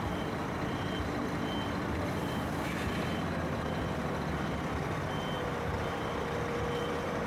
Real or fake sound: real